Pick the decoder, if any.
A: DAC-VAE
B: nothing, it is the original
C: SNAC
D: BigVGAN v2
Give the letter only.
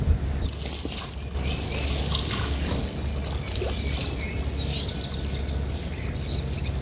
B